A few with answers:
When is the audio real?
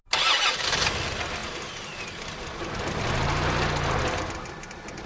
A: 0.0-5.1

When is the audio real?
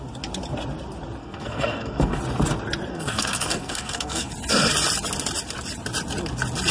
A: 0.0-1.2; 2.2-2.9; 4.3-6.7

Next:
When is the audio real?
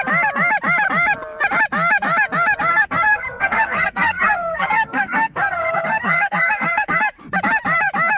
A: 0.0-2.7; 7.0-8.2